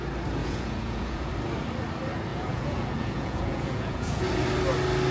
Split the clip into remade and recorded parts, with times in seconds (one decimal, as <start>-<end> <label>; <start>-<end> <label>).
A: 0.0-0.4 recorded; 0.4-1.3 remade; 1.3-2.3 recorded; 2.3-4.2 remade; 4.2-5.1 recorded